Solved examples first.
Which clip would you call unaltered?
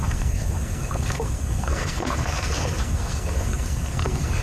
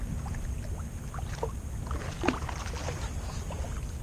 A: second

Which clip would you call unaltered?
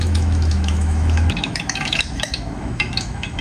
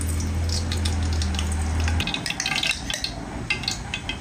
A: second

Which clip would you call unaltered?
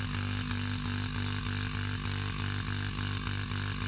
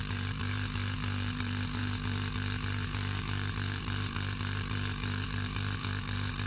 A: first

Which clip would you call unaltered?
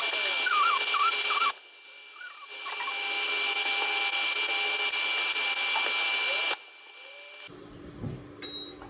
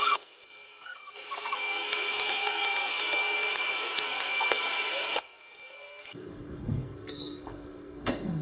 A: first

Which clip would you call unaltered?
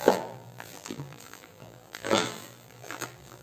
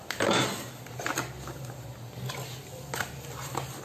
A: second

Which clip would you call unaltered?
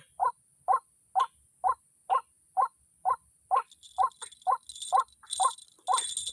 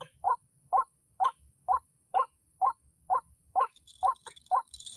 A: first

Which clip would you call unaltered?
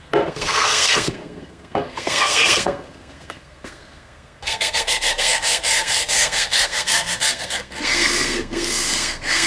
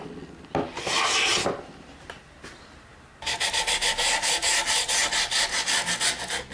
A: second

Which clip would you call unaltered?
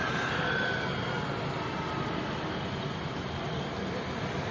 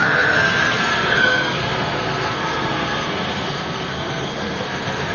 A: first